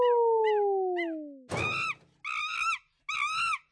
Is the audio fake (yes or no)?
no